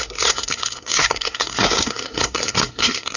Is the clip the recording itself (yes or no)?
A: no